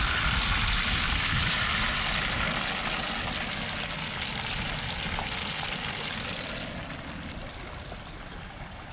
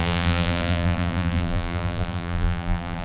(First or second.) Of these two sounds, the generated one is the second